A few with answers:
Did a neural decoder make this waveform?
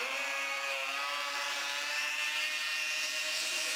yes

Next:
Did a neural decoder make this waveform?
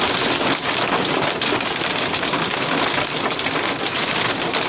yes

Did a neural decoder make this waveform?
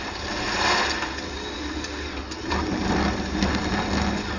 no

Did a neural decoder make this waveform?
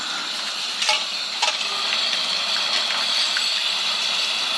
yes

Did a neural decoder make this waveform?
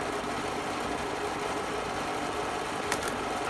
yes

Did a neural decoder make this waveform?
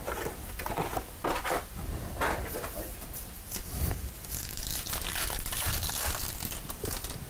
yes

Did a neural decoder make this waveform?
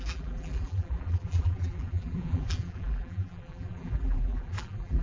yes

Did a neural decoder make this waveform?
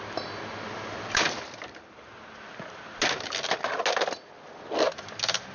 no